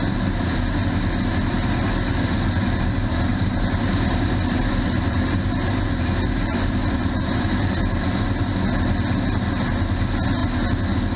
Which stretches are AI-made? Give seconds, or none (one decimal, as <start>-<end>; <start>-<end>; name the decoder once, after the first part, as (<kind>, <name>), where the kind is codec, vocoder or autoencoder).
3.3-8.1 (vocoder, BigVGAN v2)